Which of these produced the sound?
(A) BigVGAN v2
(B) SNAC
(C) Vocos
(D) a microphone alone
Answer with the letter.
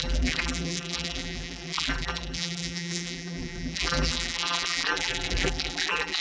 A